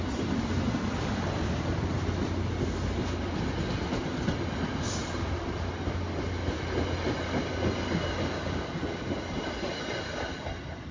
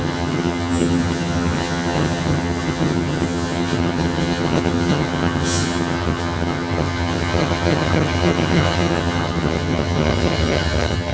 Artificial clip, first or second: second